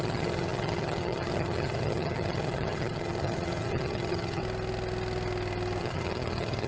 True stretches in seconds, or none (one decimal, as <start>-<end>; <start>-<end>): 4.4-5.8